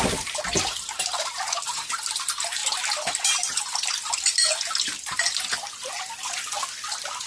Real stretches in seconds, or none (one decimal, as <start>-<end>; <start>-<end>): 0.0-7.3